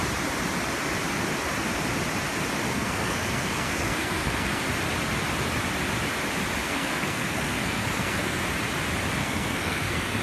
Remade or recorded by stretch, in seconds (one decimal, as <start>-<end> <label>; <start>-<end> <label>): 0.0-2.7 recorded; 2.7-4.6 remade; 4.6-6.6 recorded; 6.6-8.4 remade; 8.4-9.2 recorded; 9.2-10.2 remade